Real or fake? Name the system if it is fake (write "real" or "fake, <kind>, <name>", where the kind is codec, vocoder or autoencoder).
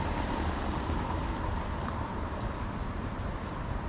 fake, vocoder, BigVGAN v2